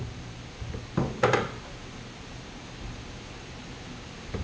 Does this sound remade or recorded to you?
recorded